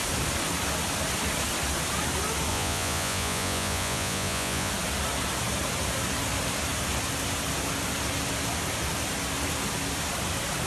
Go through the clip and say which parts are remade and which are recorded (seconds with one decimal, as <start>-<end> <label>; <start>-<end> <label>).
0.0-2.5 recorded; 2.5-4.7 remade; 4.7-10.7 recorded